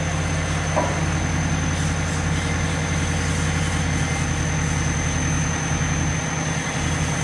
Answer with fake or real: real